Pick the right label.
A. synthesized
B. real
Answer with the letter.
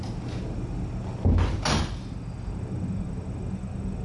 B